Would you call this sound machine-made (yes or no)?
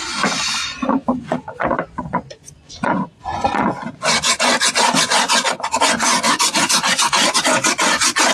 yes